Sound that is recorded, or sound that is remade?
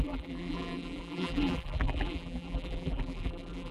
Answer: remade